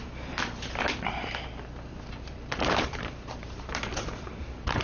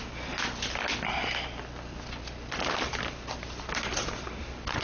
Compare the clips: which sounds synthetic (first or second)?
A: first